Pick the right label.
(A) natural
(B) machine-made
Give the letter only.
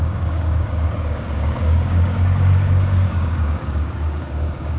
B